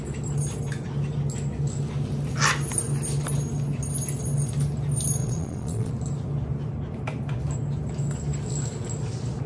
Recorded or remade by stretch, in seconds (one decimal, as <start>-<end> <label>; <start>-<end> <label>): 0.0-5.2 recorded; 5.2-5.9 remade; 5.9-9.5 recorded